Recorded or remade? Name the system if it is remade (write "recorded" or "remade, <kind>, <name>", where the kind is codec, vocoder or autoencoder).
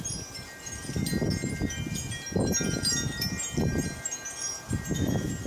recorded